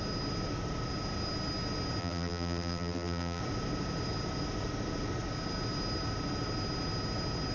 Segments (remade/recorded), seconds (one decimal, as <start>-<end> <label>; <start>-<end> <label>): 0.0-2.0 recorded; 2.0-3.4 remade; 3.4-7.5 recorded